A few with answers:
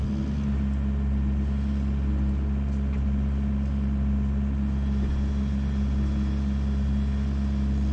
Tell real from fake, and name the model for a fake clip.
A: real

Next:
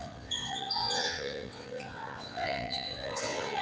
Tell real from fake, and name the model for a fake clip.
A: fake, vocoder, WaveNeXt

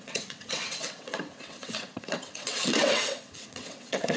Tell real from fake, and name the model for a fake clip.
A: fake, vocoder, WaveNeXt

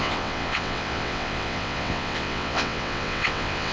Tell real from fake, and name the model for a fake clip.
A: fake, vocoder, WaveNeXt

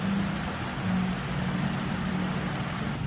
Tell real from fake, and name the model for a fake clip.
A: real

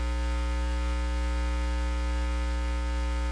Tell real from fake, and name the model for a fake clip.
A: real